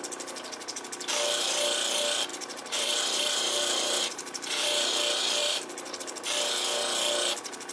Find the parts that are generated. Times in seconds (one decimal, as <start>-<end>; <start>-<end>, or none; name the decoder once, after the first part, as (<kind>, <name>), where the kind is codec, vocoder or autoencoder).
2.3-4.9 (vocoder, BigVGAN v2); 5.4-6.0